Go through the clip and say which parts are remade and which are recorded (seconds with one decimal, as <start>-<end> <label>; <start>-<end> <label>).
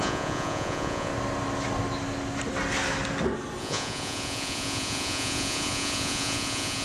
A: 0.0-1.1 remade; 1.1-3.6 recorded; 3.6-6.8 remade